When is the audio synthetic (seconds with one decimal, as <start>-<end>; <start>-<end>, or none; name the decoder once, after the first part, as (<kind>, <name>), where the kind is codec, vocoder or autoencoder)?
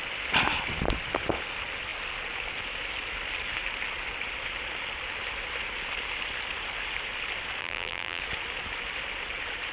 7.6-8.2 (vocoder, BigVGAN v2)